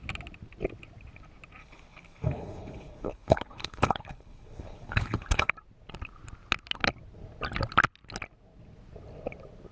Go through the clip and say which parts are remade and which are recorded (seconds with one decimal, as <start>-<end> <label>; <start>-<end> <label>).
0.0-1.6 recorded; 1.6-5.5 remade; 5.5-9.7 recorded